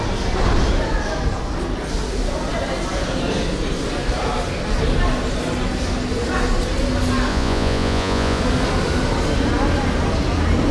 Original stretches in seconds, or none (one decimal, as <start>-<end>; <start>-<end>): 0.0-7.3; 8.4-10.7